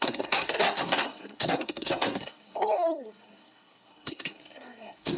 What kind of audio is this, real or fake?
fake